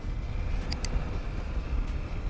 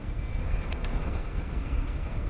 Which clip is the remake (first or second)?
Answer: second